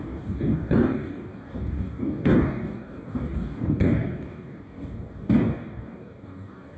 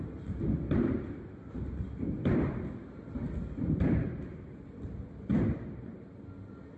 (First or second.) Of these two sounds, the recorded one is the second